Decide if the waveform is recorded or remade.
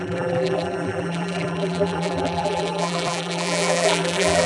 remade